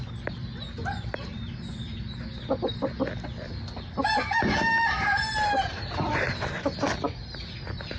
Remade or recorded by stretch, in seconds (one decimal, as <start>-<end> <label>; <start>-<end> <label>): 0.0-8.0 recorded